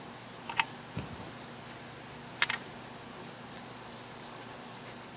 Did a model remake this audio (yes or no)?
no